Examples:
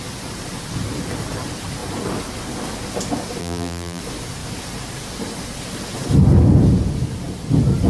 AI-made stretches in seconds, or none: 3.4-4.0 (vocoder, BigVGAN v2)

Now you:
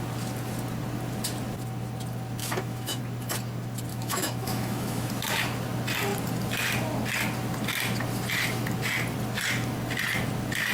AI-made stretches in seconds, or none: 2.4-3.0 (autoencoder, DAC-VAE); 3.9-5.1